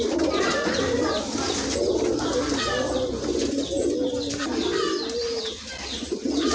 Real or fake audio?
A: real